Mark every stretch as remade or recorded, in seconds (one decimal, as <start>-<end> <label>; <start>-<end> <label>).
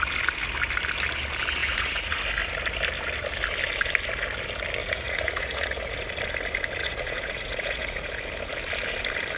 0.0-1.6 recorded; 1.6-2.2 remade; 2.2-4.8 recorded; 4.8-6.0 remade; 6.0-6.8 recorded; 6.8-8.1 remade; 8.1-9.4 recorded